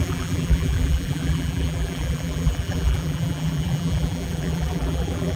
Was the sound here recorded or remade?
remade